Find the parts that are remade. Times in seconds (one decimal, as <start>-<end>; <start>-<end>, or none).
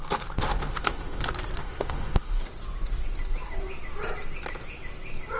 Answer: 0.4-1.2; 1.6-2.4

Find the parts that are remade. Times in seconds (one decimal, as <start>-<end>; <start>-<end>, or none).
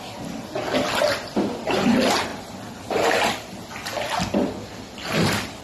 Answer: 2.3-3.2; 3.9-5.6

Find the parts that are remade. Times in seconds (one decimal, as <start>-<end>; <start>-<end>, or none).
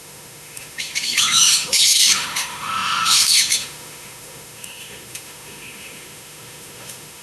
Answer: 0.0-7.2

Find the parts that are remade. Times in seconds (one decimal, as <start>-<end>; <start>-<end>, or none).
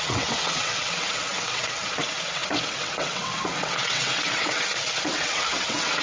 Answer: 0.0-6.0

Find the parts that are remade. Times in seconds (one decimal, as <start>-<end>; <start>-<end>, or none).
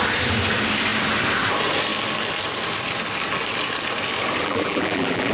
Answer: 4.4-5.3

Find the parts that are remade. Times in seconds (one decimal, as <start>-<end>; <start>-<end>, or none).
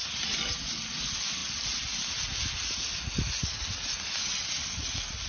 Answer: none